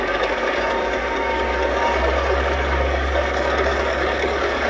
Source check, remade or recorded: remade